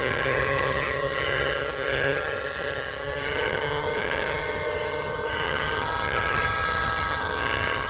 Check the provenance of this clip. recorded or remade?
remade